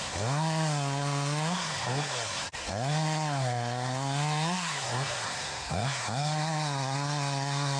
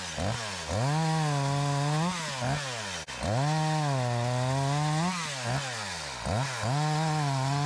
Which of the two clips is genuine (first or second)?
second